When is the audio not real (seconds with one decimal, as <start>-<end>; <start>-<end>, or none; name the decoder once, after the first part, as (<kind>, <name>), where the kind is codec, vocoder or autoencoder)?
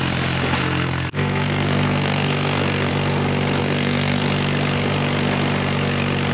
0.6-2.9 (codec, SNAC); 3.6-4.2